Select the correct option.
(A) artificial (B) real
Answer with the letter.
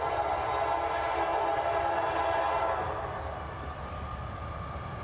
B